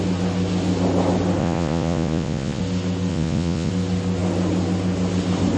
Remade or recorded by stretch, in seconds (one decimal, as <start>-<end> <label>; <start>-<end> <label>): 0.0-1.4 recorded; 1.4-2.6 remade; 2.6-3.1 recorded; 3.1-3.7 remade; 3.7-5.6 recorded